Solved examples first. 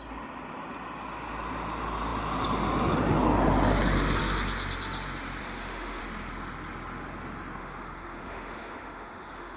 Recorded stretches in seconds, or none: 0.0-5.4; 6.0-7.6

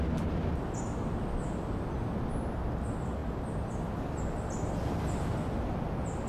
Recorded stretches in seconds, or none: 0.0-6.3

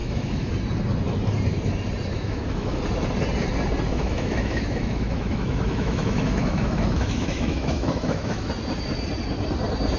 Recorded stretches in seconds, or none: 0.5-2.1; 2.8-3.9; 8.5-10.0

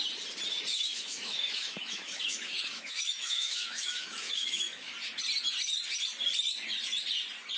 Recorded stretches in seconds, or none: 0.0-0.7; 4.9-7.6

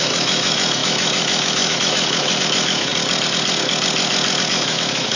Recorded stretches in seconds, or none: 2.9-4.5

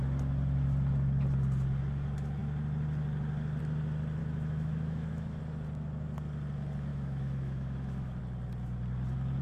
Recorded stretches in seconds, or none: 0.0-4.2; 5.4-6.9; 8.2-9.4